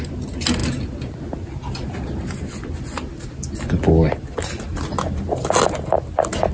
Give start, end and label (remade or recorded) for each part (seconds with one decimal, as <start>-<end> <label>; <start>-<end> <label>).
0.0-6.5 recorded

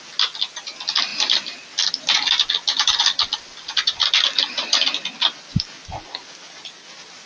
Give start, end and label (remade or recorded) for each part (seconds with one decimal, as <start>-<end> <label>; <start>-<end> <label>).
0.0-7.3 recorded

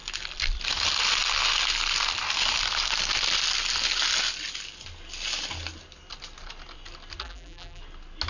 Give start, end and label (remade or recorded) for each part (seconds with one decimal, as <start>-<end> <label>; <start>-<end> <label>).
0.0-7.2 recorded; 7.2-7.8 remade; 7.8-8.3 recorded